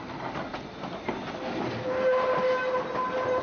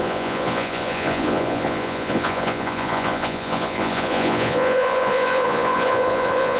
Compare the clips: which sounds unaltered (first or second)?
first